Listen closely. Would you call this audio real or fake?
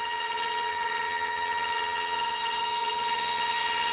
fake